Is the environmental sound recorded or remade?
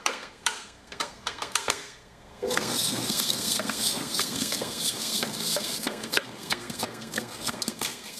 remade